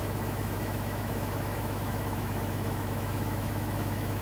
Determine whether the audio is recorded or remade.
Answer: remade